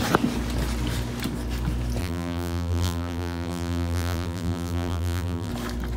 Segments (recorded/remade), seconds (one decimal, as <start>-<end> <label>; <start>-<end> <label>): 0.0-2.0 recorded; 2.0-5.5 remade; 5.5-6.0 recorded